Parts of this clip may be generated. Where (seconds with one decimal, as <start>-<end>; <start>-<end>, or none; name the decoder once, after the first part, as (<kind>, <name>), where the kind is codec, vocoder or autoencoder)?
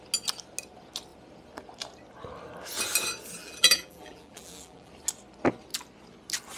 3.4-4.9 (vocoder, BigVGAN v2)